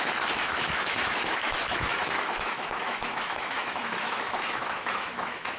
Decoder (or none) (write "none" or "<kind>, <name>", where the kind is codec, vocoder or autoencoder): autoencoder, DAC-VAE